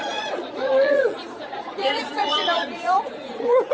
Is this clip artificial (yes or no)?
yes